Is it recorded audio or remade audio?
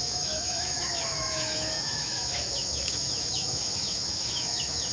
remade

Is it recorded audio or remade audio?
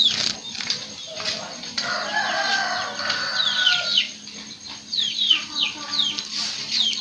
recorded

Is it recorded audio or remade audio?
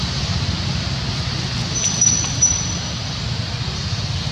recorded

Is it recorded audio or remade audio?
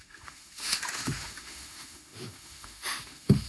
remade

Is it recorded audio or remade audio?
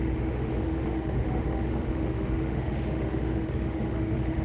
remade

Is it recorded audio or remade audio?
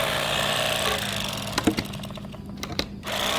recorded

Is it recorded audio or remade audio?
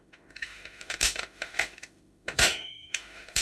remade